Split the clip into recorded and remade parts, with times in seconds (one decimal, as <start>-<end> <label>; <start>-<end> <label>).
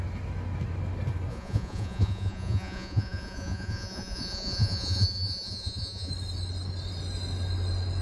0.0-1.3 recorded; 1.3-6.1 remade; 6.1-8.0 recorded